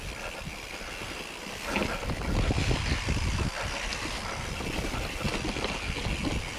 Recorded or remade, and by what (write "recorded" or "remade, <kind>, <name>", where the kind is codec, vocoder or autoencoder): recorded